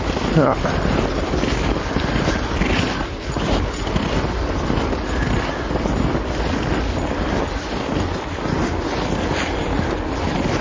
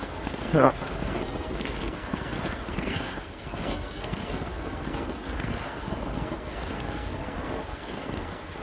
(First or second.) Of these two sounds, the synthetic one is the second